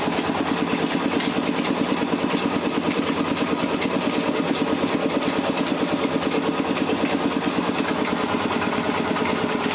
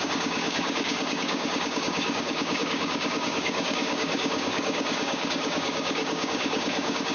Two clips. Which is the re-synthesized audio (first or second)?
second